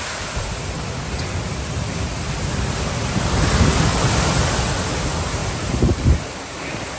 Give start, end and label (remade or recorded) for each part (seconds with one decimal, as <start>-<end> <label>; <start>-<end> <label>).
0.0-7.0 recorded